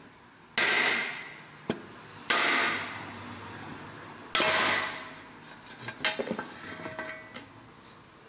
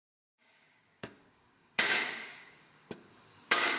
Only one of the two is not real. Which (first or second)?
second